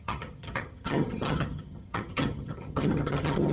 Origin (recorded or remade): remade